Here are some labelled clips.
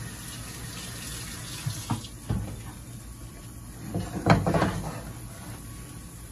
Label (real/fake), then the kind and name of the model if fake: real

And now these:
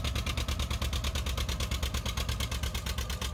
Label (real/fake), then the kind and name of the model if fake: real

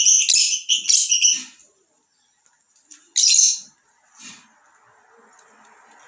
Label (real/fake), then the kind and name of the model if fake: real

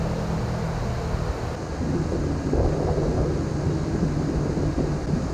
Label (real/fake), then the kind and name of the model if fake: real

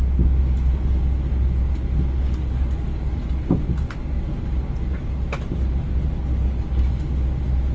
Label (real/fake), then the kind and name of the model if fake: real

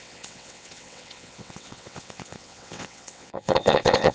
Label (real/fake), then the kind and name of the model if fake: fake, vocoder, WaveNeXt